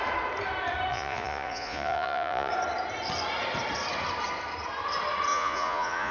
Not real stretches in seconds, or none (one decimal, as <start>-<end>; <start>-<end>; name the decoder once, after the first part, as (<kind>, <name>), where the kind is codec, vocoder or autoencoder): 0.9-2.5 (vocoder, Vocos); 5.3-6.1